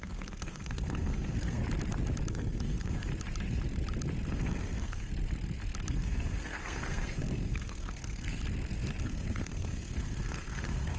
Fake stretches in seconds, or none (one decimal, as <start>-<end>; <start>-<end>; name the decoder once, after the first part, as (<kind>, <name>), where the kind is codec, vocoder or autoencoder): 0.0-1.6 (codec, SNAC); 2.3-3.1; 4.3-5.1; 5.9-8.4; 9.0-11.0